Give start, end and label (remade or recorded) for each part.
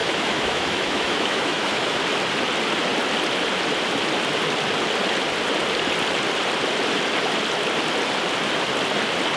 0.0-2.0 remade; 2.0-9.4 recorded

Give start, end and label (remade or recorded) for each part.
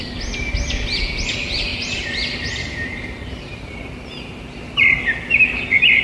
0.0-1.7 recorded; 1.7-4.6 remade; 4.6-6.0 recorded